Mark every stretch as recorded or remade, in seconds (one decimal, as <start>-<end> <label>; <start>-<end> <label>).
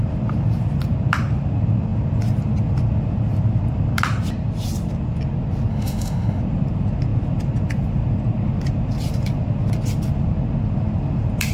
0.0-5.7 recorded; 5.7-6.4 remade; 6.4-11.5 recorded